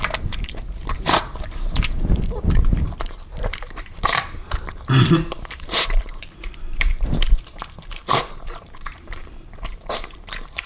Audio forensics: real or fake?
fake